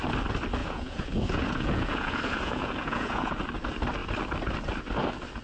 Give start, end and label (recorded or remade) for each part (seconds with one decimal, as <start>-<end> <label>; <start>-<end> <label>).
0.0-0.6 recorded; 0.6-3.4 remade; 3.4-5.4 recorded